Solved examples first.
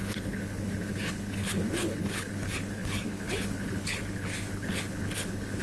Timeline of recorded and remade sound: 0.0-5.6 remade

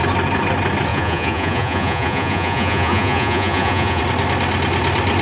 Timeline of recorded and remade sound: 0.0-0.9 recorded; 0.9-4.0 remade; 4.0-5.2 recorded